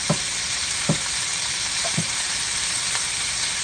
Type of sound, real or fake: fake